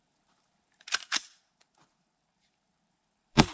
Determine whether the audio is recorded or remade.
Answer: remade